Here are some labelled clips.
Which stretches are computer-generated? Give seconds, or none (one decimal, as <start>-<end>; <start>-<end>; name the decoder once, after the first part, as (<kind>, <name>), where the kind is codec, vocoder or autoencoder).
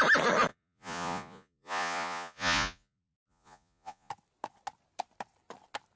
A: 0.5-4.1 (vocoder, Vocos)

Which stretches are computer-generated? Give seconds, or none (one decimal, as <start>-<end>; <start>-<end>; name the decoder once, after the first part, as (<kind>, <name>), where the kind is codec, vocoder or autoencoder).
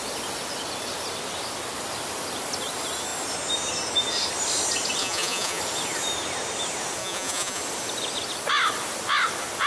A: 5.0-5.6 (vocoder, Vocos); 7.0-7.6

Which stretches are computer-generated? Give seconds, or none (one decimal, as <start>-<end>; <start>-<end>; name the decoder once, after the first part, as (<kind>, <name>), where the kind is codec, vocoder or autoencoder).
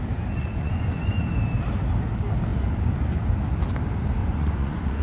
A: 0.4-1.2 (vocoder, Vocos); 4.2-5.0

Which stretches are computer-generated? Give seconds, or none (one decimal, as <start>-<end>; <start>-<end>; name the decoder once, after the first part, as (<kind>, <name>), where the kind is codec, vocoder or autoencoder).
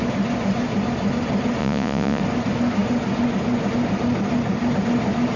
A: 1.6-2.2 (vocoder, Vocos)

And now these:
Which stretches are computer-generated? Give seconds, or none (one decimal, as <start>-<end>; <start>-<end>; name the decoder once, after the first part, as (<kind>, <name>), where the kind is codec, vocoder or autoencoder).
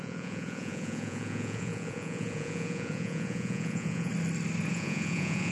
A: 0.0-4.1 (vocoder, Vocos); 4.7-5.5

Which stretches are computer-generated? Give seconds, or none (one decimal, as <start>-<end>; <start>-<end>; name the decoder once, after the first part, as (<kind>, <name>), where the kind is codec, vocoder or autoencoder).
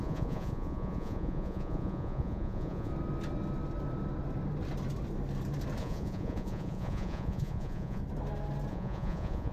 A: 0.0-2.9 (vocoder, Vocos); 5.8-8.0; 8.7-9.5